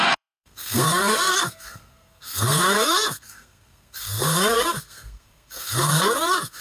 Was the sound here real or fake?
fake